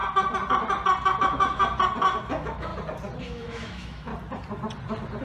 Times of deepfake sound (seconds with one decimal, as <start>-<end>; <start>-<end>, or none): 1.2-1.6; 2.2-2.7; 3.2-4.1